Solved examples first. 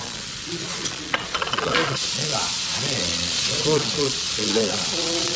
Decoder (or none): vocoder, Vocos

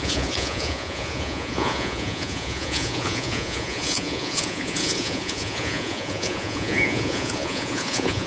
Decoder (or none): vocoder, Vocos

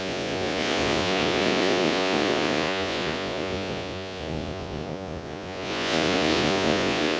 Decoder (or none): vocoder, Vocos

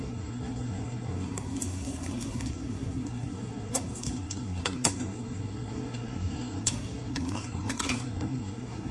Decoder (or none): codec, SNAC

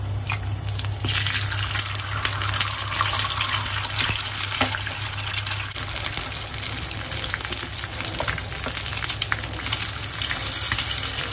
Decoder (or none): none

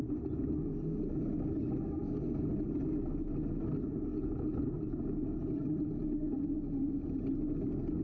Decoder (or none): none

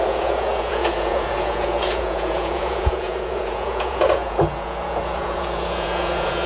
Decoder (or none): vocoder, Vocos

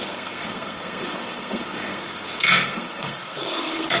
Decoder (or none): codec, SNAC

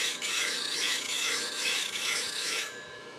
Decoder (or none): autoencoder, DAC-VAE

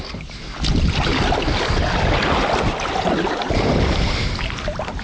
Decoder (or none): none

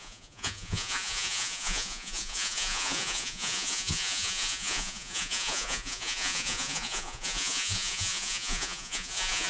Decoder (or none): vocoder, Vocos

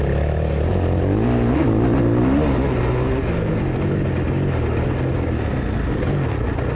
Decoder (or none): none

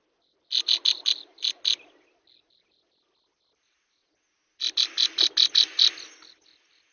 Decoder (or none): none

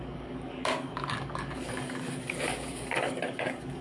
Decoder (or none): codec, DAC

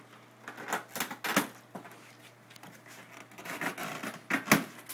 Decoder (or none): none